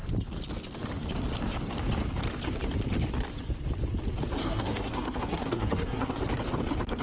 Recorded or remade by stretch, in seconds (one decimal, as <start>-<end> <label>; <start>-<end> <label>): 0.0-4.4 recorded; 4.4-6.2 remade; 6.2-7.0 recorded